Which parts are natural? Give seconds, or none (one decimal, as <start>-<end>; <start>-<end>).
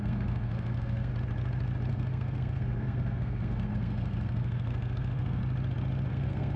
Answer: 1.1-1.9; 5.4-6.1